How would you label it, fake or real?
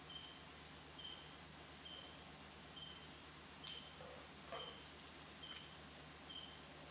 real